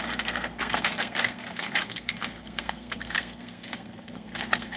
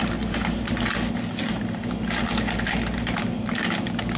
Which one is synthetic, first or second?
first